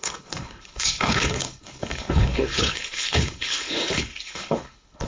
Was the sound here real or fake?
fake